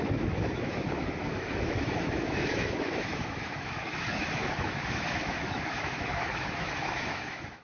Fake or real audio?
fake